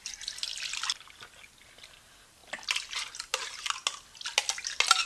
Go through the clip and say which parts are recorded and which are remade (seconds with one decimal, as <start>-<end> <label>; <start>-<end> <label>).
0.0-5.1 recorded